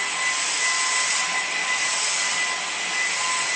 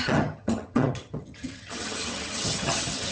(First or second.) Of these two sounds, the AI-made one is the second